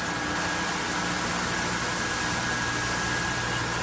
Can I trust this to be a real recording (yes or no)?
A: yes